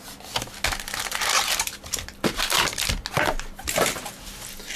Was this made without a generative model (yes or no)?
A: yes